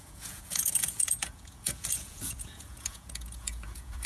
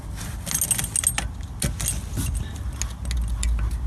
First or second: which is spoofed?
first